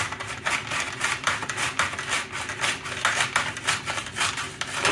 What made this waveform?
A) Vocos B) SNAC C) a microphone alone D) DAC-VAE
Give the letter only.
C